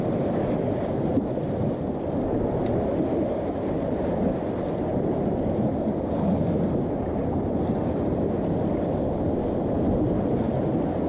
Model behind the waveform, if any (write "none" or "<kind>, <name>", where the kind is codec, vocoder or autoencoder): none